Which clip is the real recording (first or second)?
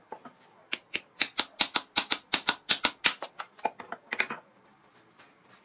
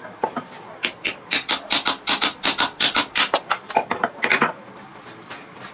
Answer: first